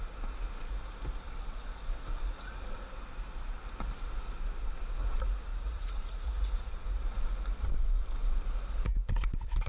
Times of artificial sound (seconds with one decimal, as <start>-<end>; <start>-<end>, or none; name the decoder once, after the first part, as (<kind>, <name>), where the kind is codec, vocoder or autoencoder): 5.5-7.0 (vocoder, Vocos)